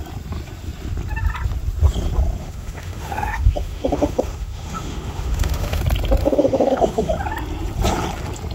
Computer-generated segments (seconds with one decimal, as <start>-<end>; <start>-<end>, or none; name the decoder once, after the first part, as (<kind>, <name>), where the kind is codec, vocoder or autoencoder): 2.4-5.8 (autoencoder, DAC-VAE); 6.2-7.1